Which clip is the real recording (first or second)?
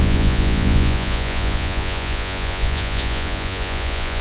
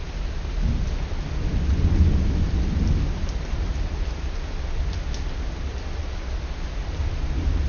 second